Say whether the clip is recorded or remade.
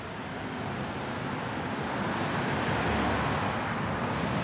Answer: recorded